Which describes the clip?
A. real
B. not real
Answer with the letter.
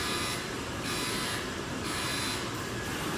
B